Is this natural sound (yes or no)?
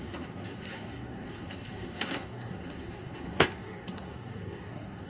no